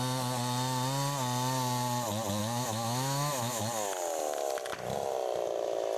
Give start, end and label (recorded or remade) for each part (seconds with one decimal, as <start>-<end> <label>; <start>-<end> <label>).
0.0-2.4 recorded; 2.4-3.6 remade; 3.6-6.0 recorded